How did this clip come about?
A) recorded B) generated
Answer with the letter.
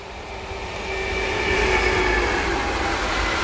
A